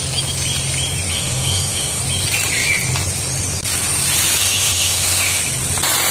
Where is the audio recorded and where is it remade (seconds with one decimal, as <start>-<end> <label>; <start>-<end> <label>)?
0.0-1.1 recorded; 1.1-2.0 remade; 2.0-4.4 recorded; 4.4-5.4 remade; 5.4-6.1 recorded